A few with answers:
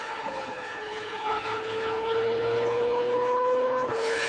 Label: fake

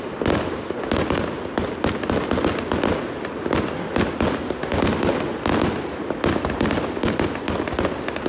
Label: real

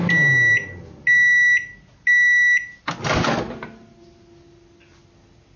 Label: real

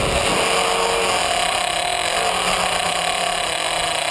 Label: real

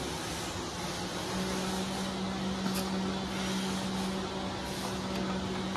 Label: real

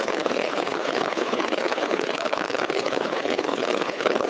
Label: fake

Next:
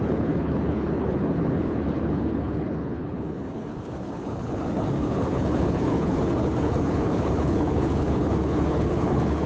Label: fake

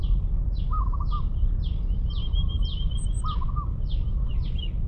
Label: real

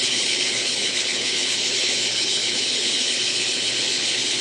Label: fake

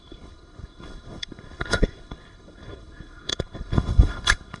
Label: fake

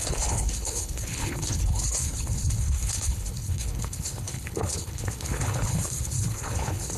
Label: fake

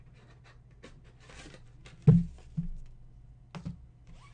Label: real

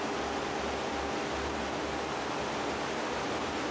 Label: real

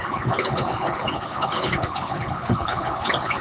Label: fake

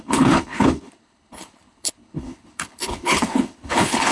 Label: fake